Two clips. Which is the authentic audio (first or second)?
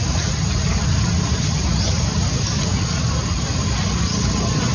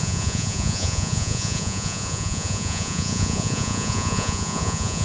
first